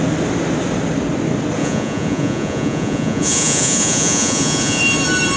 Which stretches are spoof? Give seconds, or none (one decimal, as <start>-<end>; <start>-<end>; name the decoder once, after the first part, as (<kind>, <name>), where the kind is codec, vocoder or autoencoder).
1.6-4.8 (vocoder, Vocos)